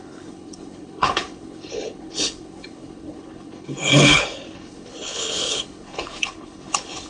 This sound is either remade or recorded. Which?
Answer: remade